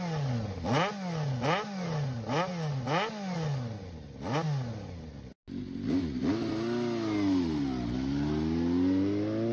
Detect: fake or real real